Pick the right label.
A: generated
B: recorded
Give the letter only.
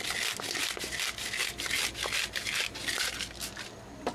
B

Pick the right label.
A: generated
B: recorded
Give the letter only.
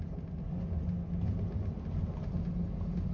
B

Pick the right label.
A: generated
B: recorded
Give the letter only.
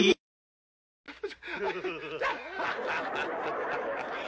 B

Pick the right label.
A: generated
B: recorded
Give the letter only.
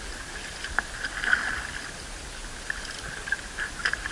B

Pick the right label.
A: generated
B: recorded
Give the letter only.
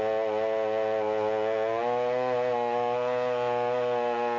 B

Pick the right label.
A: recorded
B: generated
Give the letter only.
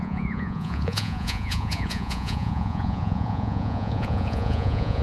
B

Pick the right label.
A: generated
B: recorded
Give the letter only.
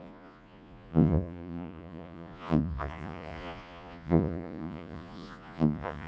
A